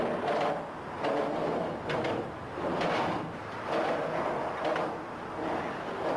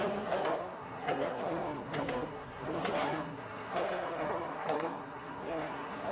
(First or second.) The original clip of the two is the first